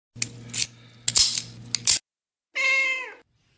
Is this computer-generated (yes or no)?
no